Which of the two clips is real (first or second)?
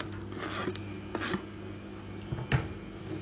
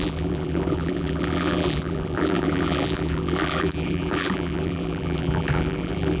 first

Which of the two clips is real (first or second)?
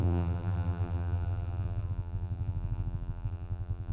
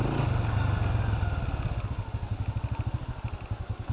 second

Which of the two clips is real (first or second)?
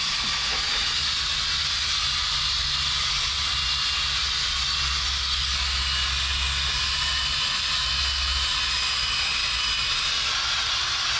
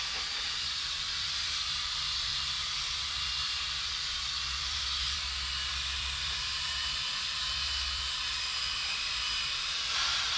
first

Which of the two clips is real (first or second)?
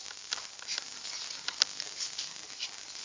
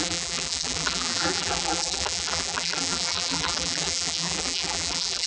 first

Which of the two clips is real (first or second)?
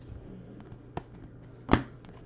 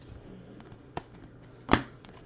first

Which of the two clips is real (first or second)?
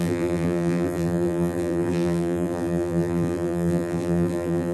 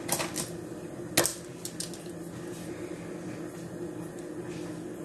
second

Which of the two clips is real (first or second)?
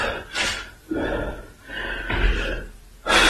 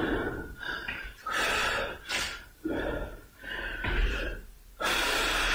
first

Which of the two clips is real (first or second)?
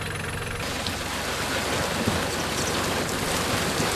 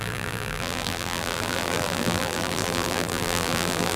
first